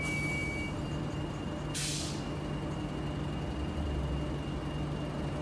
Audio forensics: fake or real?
real